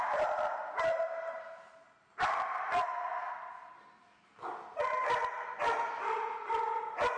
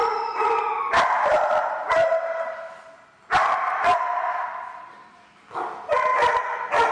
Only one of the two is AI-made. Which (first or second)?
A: second